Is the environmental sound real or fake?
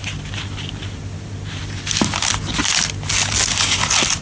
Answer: real